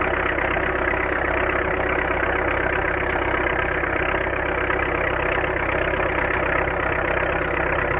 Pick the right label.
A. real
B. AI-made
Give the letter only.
A